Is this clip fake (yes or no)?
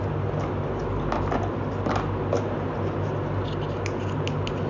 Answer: no